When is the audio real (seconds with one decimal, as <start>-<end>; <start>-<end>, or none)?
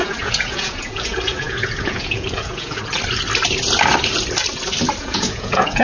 2.8-5.0